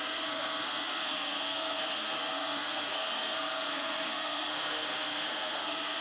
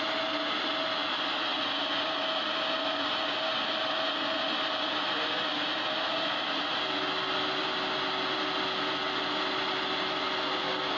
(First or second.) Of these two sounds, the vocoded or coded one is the first